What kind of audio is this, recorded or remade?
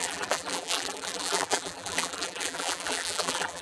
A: remade